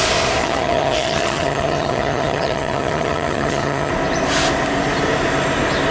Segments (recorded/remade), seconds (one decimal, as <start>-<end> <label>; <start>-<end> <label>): 0.0-0.4 recorded; 0.4-3.9 remade; 3.9-5.9 recorded